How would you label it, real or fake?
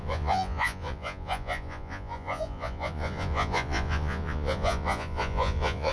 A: fake